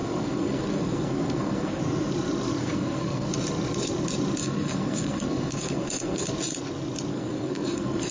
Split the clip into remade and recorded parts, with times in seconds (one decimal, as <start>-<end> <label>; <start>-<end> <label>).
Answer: 0.0-1.8 remade; 1.8-2.6 recorded; 2.6-3.3 remade; 3.3-4.4 recorded; 4.4-6.2 remade; 6.2-7.1 recorded; 7.1-8.1 remade

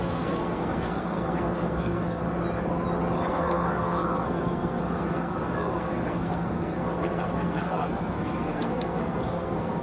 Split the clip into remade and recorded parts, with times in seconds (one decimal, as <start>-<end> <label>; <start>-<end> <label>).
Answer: 0.0-2.2 remade; 2.2-3.3 recorded; 3.3-9.8 remade

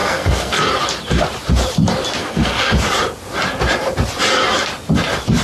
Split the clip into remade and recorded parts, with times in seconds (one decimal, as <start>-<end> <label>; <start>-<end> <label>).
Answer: 0.0-0.6 remade; 0.6-2.2 recorded; 2.2-2.7 remade; 2.7-5.4 recorded

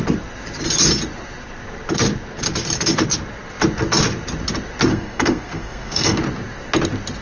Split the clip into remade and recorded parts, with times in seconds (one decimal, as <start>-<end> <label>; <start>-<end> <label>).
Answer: 0.0-4.9 recorded; 4.9-6.2 remade; 6.2-7.2 recorded

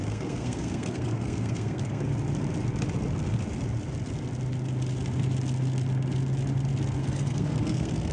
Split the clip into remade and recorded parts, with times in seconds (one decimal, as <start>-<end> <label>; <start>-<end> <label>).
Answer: 0.0-2.1 remade; 2.1-7.0 recorded; 7.0-8.1 remade

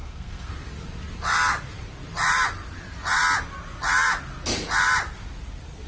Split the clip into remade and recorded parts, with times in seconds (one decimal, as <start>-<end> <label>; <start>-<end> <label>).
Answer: 0.0-0.7 remade; 0.7-5.9 recorded